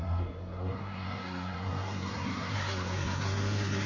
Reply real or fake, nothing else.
fake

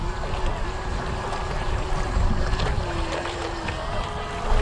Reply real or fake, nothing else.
real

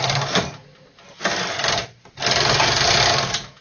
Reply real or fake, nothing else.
real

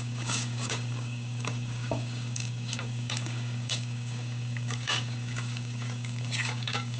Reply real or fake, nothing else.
fake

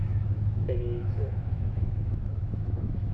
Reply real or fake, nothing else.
fake